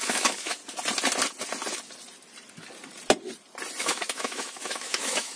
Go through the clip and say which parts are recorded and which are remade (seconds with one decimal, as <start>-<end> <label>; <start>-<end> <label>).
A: 0.0-0.6 remade; 0.6-3.8 recorded; 3.8-5.4 remade